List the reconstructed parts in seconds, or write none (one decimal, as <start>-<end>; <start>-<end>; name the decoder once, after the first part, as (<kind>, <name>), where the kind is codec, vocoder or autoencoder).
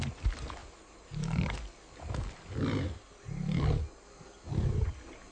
none